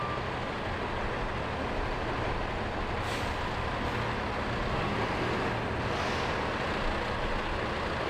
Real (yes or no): yes